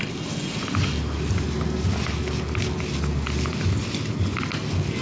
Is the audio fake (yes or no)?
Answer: no